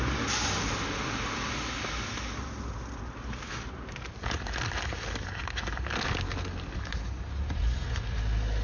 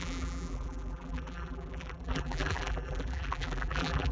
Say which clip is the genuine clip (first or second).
first